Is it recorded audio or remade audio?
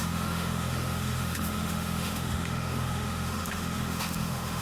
remade